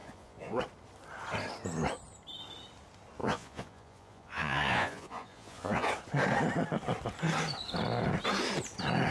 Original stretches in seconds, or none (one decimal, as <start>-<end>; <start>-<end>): 0.6-3.2; 5.9-9.1